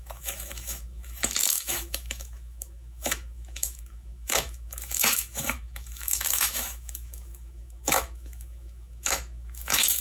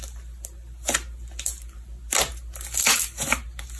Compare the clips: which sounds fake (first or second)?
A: first